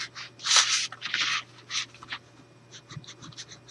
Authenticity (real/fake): real